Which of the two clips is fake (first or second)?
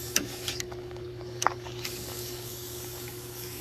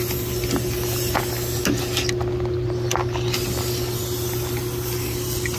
first